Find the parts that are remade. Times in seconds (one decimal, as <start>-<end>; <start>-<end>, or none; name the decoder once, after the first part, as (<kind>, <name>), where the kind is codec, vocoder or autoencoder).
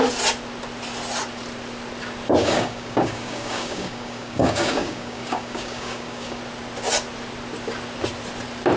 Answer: 2.4-6.4 (codec, DAC)